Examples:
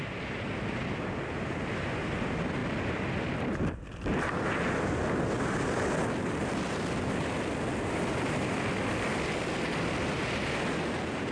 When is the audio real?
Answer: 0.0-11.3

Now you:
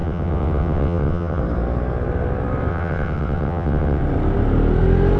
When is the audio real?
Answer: 1.4-2.7; 4.0-5.2

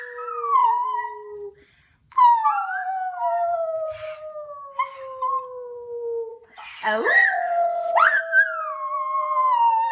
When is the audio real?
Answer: 0.0-6.3; 8.2-9.9

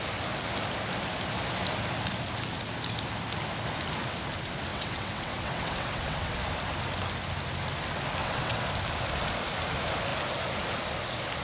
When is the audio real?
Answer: 0.0-4.7; 6.4-8.2; 8.7-11.4

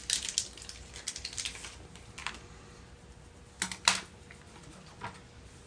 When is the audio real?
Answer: 0.0-5.7

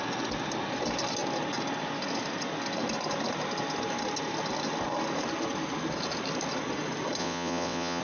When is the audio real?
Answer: 0.0-7.2